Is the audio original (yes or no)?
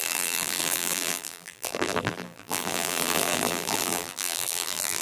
no